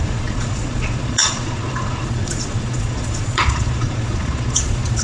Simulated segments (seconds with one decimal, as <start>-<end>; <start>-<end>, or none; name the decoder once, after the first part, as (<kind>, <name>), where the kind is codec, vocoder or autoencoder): 0.0-5.0 (vocoder, Vocos)